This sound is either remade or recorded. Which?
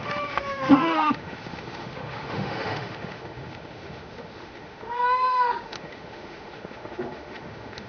remade